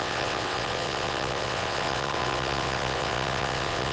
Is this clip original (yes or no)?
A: no